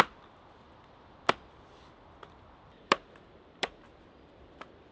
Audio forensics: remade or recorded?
remade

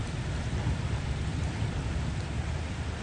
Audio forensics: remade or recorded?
remade